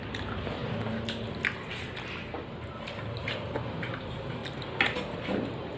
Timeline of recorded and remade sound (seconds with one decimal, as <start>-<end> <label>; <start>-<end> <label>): 0.0-5.8 recorded

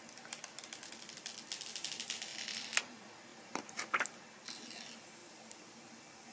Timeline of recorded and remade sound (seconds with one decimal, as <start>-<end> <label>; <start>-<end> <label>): 0.0-3.3 recorded; 3.3-4.1 remade; 4.1-5.2 recorded; 5.2-5.8 remade; 5.8-6.3 recorded

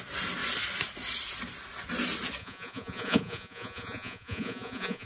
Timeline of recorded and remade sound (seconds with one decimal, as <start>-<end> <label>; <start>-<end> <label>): 0.0-2.4 recorded; 2.4-5.1 remade